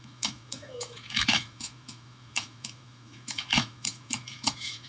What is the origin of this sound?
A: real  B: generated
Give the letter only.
B